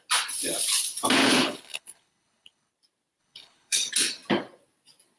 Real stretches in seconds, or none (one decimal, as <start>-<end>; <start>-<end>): 0.0-1.2; 2.7-3.2; 3.9-5.2